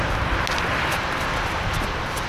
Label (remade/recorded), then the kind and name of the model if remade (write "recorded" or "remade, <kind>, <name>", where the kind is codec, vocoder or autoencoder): recorded